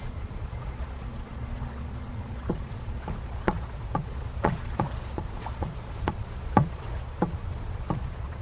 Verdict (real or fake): fake